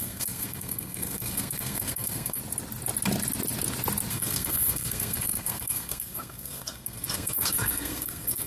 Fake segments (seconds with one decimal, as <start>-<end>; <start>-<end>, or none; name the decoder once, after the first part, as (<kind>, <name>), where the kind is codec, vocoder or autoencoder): 0.0-2.4 (codec, SNAC); 4.1-8.5